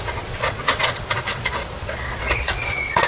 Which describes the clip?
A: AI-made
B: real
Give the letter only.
A